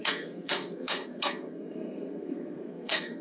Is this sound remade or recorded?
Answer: remade